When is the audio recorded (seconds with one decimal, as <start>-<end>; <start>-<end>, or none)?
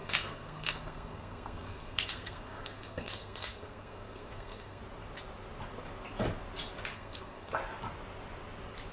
4.8-6.9; 7.5-8.9